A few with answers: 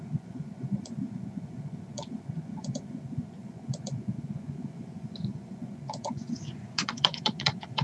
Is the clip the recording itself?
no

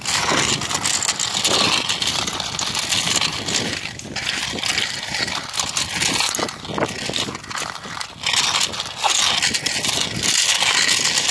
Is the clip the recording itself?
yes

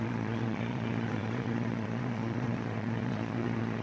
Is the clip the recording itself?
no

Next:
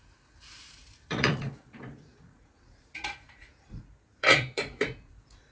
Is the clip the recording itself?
no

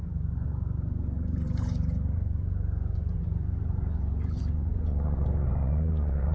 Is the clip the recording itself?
no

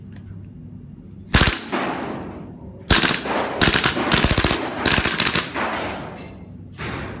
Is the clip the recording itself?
yes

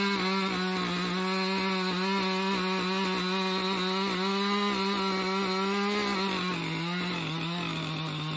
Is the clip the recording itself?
yes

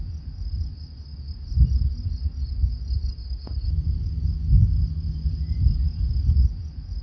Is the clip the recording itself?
yes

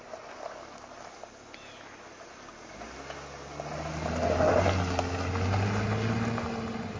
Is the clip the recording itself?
yes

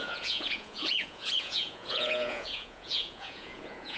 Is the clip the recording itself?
no